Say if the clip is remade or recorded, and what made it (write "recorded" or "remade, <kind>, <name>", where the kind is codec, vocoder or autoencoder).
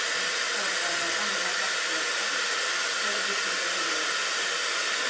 recorded